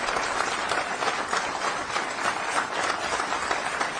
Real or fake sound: real